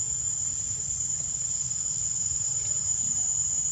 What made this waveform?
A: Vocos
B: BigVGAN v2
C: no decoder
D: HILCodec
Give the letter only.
C